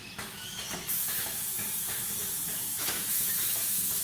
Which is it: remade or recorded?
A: remade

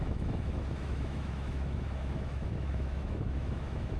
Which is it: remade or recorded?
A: remade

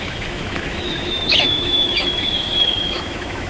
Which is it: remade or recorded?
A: remade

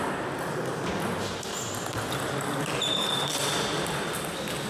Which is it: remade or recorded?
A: recorded